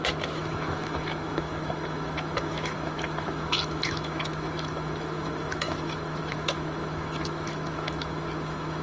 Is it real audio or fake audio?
fake